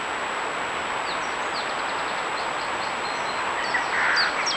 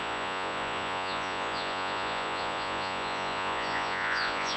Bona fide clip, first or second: first